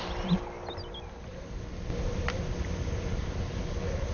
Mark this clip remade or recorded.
recorded